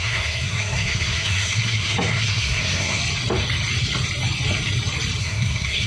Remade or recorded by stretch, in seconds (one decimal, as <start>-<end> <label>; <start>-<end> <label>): 0.0-3.0 remade; 3.0-5.2 recorded; 5.2-5.9 remade